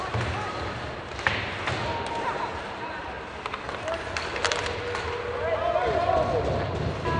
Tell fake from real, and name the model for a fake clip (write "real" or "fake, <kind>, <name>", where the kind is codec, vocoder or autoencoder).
real